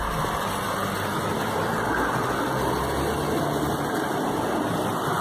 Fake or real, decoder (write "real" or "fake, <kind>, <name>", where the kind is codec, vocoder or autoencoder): real